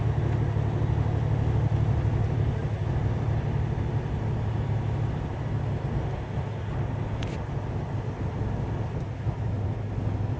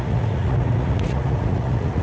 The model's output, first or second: second